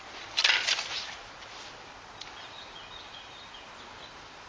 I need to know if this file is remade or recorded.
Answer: recorded